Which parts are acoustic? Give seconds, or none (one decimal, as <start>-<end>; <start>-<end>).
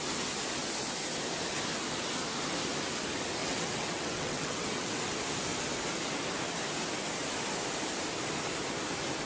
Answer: 0.0-3.4; 5.1-9.3